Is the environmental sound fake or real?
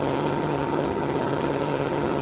fake